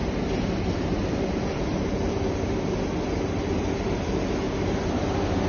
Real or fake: real